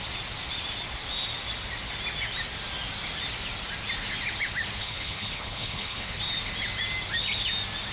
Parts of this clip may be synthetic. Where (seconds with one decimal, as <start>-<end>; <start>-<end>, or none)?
4.8-6.2